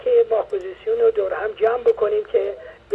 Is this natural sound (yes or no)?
yes